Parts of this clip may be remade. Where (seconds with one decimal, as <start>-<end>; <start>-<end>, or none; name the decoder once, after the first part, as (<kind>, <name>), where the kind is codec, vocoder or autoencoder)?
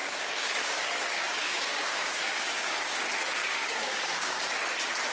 0.0-3.0 (codec, DAC); 3.4-4.4